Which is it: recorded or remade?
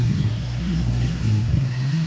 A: remade